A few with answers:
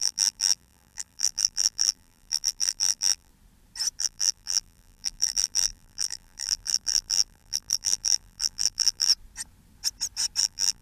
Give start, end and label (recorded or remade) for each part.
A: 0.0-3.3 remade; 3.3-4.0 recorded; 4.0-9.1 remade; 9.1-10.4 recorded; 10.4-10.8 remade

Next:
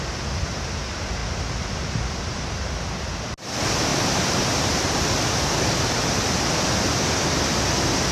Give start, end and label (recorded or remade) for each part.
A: 0.0-1.2 recorded; 1.2-2.5 remade; 2.5-3.9 recorded; 3.9-4.7 remade; 4.7-8.1 recorded

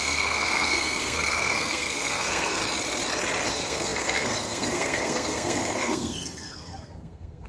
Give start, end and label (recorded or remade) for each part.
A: 0.0-2.6 remade; 2.6-3.5 recorded; 3.5-7.5 remade